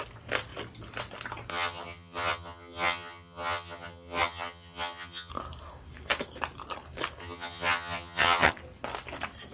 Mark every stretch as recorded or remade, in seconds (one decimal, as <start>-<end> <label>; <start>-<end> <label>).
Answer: 0.0-1.5 recorded; 1.5-5.3 remade; 5.3-7.2 recorded; 7.2-8.5 remade; 8.5-9.5 recorded